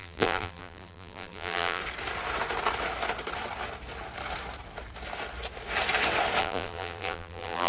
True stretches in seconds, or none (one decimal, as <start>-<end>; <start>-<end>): 1.8-6.4